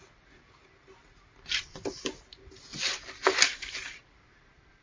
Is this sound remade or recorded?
recorded